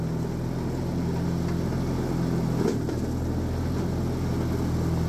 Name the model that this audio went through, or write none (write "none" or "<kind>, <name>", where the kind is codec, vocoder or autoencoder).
none